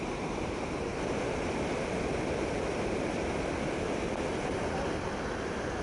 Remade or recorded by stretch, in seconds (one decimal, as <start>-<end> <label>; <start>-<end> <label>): 0.0-0.9 remade; 0.9-4.4 recorded; 4.4-5.8 remade